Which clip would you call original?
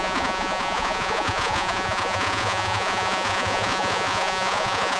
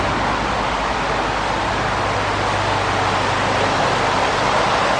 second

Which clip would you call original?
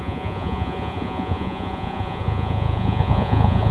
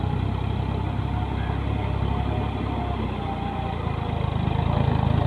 second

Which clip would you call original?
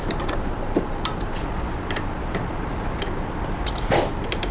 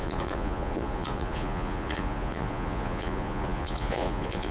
first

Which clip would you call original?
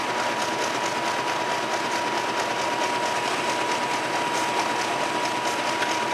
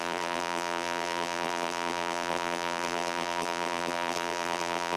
first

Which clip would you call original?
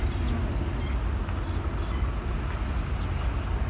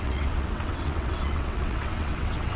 first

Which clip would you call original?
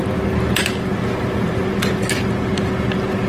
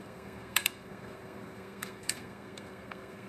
first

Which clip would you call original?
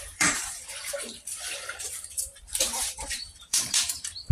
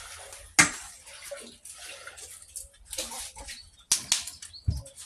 second